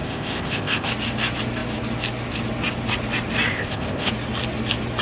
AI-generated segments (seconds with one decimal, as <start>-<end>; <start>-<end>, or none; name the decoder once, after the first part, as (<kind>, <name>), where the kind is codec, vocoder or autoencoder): 0.0-0.9 (codec, ZipCodec); 3.5-4.1